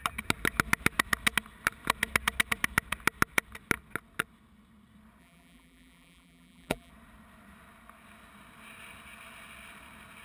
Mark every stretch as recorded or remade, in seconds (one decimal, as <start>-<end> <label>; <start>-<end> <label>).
0.0-5.2 recorded; 5.2-6.9 remade; 6.9-10.2 recorded